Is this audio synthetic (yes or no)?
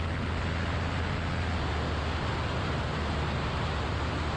no